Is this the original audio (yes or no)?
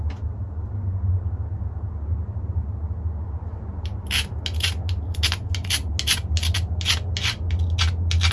yes